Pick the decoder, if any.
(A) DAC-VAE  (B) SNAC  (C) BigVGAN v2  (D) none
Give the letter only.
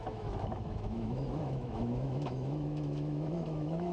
A